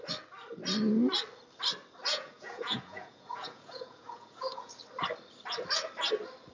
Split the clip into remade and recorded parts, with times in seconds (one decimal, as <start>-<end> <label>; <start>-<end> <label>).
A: 0.0-2.1 recorded; 2.1-4.7 remade; 4.7-6.5 recorded